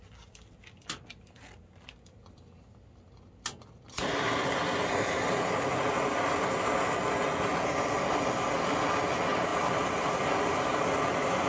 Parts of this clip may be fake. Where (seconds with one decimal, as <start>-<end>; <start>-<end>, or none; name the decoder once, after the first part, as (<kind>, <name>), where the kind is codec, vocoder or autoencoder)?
none